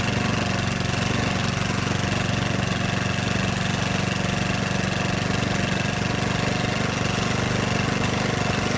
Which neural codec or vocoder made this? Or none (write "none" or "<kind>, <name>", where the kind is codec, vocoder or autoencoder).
none